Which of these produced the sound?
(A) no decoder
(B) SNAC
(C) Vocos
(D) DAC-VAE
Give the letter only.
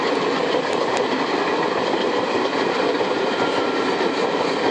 A